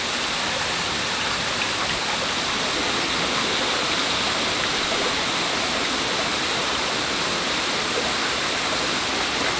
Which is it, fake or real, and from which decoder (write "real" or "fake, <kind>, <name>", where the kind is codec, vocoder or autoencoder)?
real